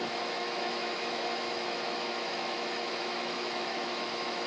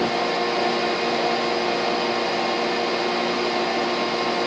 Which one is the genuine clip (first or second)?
second